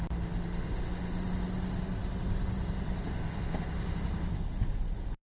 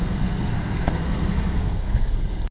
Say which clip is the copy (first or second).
second